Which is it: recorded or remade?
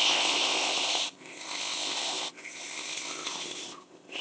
remade